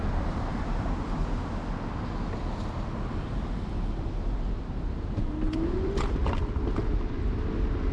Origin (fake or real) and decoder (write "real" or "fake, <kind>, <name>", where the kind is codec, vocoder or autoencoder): real